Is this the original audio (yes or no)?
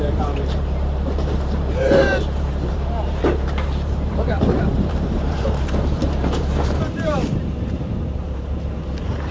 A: no